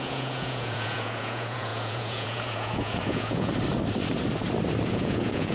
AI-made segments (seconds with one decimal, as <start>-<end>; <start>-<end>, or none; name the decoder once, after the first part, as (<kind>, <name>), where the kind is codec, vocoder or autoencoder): 0.0-3.5 (vocoder, Vocos); 4.9-5.5